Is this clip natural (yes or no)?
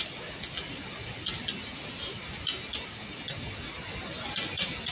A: yes